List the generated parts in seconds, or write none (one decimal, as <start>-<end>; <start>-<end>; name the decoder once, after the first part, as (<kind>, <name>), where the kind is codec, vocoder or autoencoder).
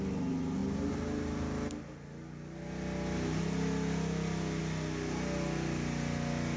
none